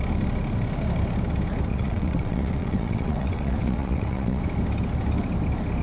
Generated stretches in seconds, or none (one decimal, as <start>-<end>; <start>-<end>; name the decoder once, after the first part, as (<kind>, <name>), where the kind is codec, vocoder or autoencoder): 1.7-4.4 (vocoder, WaveNeXt)